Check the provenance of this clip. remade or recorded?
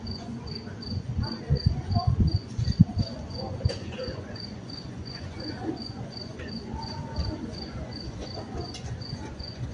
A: remade